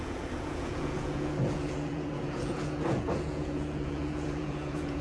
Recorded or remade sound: remade